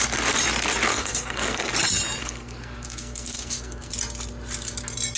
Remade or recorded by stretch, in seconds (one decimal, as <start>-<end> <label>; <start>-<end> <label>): 0.0-0.9 recorded; 0.9-1.7 remade; 1.7-2.2 recorded; 2.2-3.9 remade; 3.9-5.2 recorded